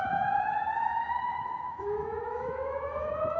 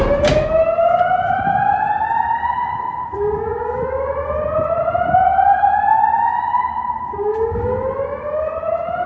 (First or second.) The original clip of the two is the second